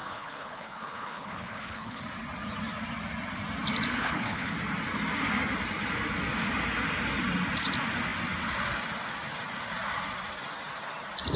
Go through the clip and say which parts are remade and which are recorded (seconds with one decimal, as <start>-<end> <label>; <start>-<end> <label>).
0.0-2.0 remade; 2.0-3.9 recorded; 3.9-4.5 remade; 4.5-11.4 recorded